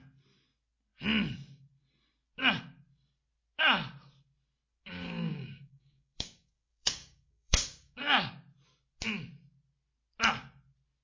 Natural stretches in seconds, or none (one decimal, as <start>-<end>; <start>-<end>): 0.0-4.8; 8.0-11.0